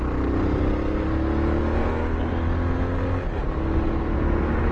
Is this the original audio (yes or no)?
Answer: yes